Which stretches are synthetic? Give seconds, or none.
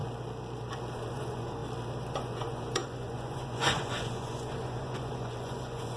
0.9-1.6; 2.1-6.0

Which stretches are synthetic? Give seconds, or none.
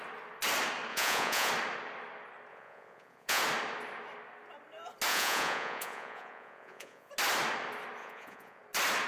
0.9-1.5; 2.5-3.4; 5.1-7.1; 8.0-8.6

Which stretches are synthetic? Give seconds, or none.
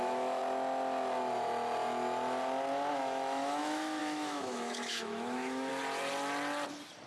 0.0-0.4; 2.9-5.7